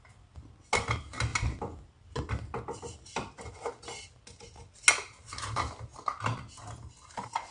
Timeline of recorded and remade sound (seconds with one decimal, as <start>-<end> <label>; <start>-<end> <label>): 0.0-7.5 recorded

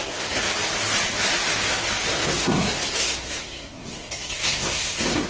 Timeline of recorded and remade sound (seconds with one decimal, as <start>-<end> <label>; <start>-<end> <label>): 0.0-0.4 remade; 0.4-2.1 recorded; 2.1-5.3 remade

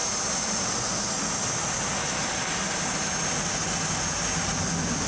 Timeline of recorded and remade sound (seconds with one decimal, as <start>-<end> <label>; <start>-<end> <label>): 0.0-5.1 recorded

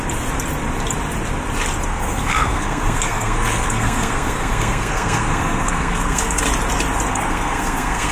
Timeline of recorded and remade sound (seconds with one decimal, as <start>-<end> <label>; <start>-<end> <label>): 0.0-1.9 recorded; 1.9-6.4 remade; 6.4-7.1 recorded; 7.1-8.1 remade